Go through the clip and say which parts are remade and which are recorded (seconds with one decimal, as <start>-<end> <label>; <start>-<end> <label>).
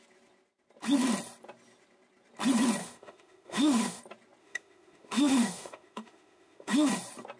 0.0-2.8 recorded; 2.8-4.0 remade; 4.0-4.4 recorded; 4.4-6.9 remade; 6.9-7.4 recorded